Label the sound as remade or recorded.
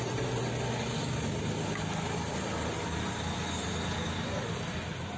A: recorded